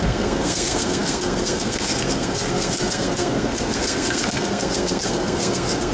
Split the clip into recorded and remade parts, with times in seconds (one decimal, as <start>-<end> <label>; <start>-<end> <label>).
0.0-5.9 remade

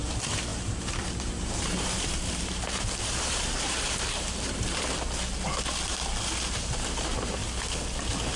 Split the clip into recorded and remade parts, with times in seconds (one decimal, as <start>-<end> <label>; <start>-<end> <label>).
0.0-0.5 recorded; 0.5-4.8 remade; 4.8-8.4 recorded

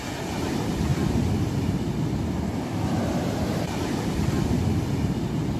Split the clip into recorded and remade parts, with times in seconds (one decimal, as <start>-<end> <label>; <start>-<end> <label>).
0.0-0.9 recorded; 0.9-4.3 remade; 4.3-5.6 recorded

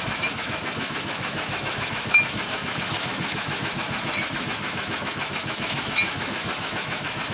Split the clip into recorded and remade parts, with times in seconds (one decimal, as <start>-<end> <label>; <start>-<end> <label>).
0.0-7.3 remade

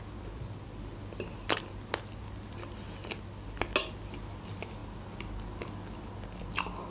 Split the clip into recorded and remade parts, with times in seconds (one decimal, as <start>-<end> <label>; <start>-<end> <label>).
0.0-6.9 recorded

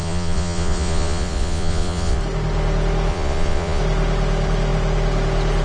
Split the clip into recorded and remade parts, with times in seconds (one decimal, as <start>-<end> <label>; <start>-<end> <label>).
0.0-2.2 remade; 2.2-3.1 recorded; 3.1-3.8 remade; 3.8-5.6 recorded